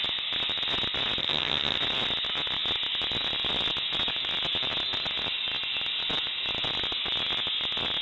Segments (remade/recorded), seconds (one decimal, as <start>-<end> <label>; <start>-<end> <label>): 0.0-1.2 recorded; 1.2-1.8 remade; 1.8-8.0 recorded